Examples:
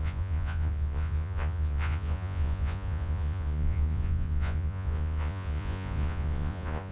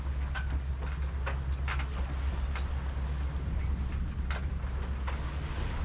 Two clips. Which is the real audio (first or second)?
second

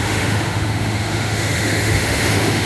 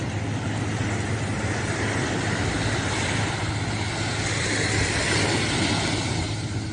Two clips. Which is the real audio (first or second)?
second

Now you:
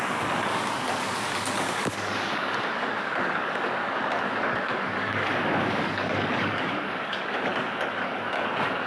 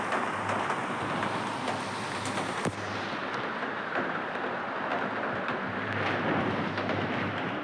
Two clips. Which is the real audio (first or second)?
second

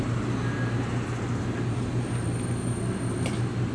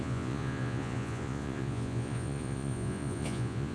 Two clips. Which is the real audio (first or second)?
first